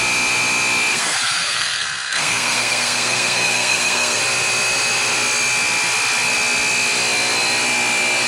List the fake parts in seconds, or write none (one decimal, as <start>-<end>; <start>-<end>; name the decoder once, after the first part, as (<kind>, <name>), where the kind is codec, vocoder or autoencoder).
0.9-4.2 (codec, SNAC)